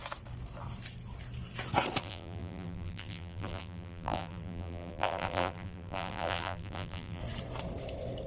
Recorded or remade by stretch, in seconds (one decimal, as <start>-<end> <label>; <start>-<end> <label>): 0.0-2.0 recorded; 2.0-7.2 remade; 7.2-8.3 recorded